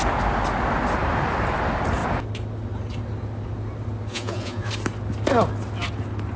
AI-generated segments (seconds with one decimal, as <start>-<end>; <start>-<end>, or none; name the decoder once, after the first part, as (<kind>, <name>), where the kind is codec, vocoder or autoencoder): 4.1-4.7 (vocoder, Vocos)